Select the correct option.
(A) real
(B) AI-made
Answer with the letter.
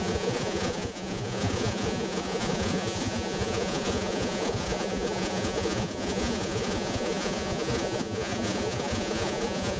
B